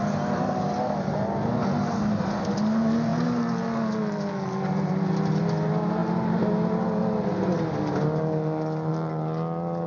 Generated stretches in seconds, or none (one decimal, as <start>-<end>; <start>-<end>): none